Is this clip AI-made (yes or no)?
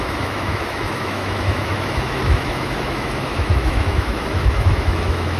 yes